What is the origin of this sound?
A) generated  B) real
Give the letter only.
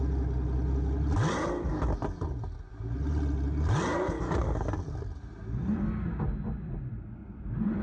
B